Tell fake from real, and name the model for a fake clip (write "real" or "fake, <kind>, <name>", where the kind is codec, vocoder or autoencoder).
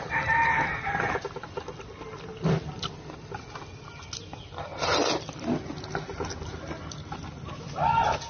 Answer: real